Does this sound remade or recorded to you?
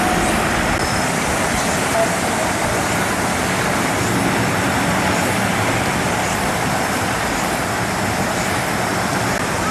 recorded